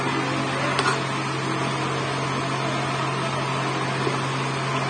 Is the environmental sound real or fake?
real